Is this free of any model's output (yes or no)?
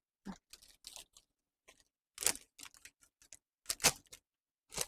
yes